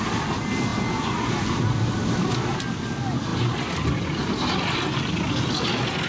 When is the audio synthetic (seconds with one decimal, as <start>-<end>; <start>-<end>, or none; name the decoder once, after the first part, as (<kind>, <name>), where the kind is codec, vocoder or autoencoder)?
none